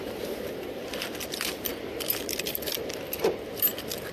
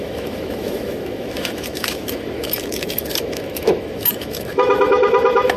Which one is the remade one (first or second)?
second